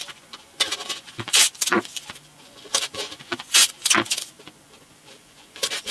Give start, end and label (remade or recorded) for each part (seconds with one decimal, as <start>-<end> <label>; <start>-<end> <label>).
0.0-5.9 remade